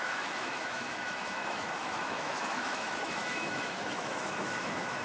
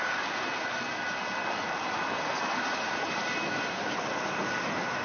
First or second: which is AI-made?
first